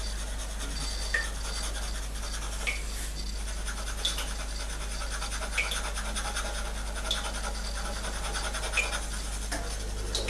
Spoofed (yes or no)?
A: no